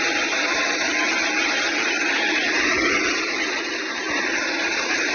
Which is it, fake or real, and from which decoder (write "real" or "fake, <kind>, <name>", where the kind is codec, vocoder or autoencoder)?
real